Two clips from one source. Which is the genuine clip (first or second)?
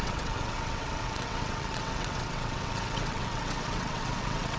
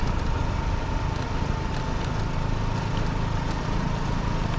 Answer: second